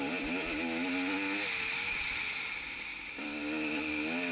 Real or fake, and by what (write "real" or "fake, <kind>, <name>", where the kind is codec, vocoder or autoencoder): real